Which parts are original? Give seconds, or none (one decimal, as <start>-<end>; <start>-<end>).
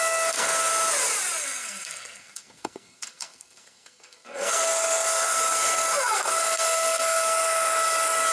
0.7-1.4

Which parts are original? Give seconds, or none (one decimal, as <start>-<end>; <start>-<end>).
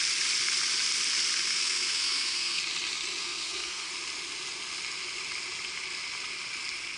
0.0-1.5; 2.6-3.2; 3.9-7.0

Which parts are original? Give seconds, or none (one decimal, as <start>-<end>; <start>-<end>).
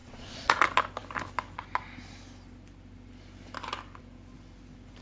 0.6-5.0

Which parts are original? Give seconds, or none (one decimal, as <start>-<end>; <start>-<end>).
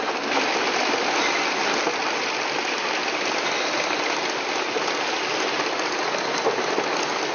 0.0-7.3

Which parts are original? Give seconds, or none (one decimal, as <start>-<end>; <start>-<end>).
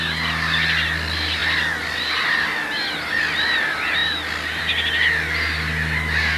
0.0-1.4; 2.3-4.0; 4.6-6.4